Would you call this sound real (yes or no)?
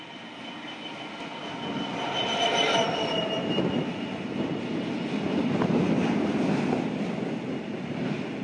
yes